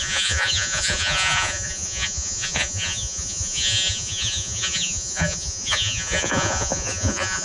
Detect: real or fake fake